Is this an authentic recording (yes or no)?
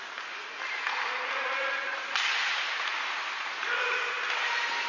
yes